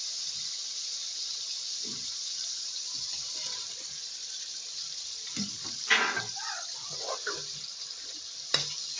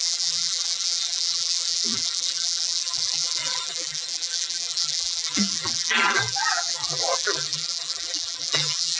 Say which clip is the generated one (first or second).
second